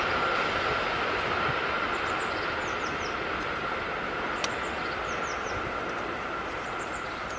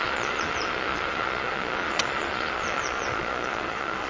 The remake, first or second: second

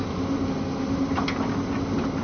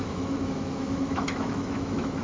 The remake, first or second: second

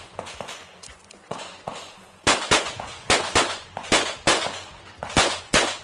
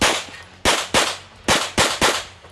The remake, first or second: first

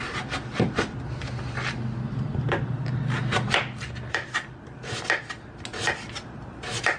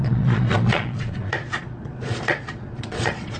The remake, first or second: second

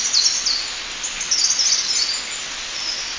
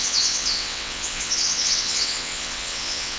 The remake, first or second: second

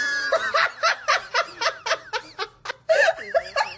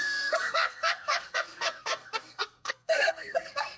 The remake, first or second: second